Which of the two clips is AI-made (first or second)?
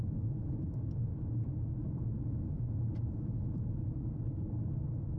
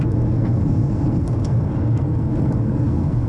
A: second